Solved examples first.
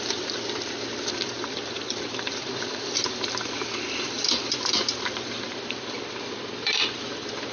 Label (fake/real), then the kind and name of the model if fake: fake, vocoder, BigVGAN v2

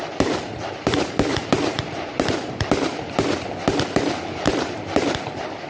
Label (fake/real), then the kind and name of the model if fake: fake, vocoder, BigVGAN v2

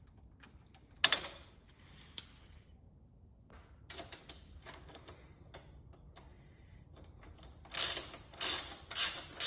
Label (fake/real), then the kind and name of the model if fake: real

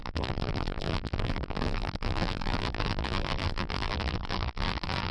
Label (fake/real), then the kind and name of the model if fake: fake, vocoder, BigVGAN v2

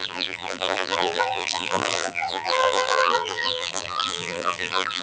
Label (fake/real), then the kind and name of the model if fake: fake, vocoder, BigVGAN v2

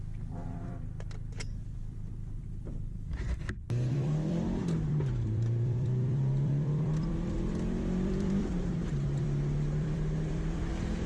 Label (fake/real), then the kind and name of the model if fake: fake, vocoder, BigVGAN v2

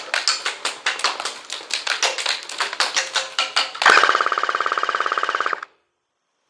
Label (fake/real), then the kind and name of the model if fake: real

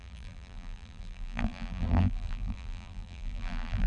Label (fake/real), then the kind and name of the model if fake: fake, vocoder, BigVGAN v2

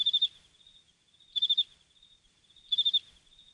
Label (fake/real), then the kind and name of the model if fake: fake, vocoder, BigVGAN v2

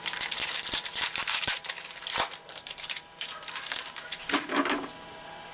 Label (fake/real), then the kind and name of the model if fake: fake, vocoder, BigVGAN v2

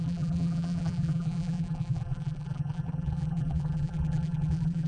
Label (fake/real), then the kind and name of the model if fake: fake, vocoder, BigVGAN v2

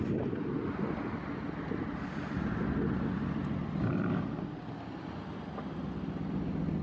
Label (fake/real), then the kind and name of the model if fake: real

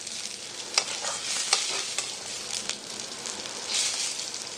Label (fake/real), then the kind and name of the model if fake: real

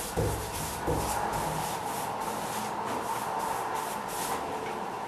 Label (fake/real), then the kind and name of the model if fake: real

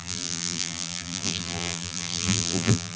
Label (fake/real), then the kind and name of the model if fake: fake, vocoder, BigVGAN v2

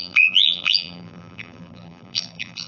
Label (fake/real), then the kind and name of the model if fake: fake, vocoder, BigVGAN v2